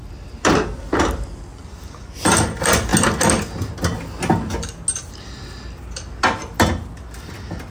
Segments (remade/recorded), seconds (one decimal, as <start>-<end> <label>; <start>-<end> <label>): 0.0-7.7 recorded